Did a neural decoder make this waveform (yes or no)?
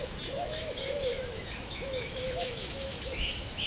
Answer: yes